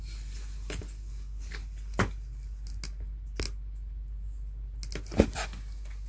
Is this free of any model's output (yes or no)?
yes